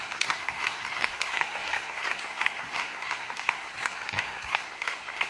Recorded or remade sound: remade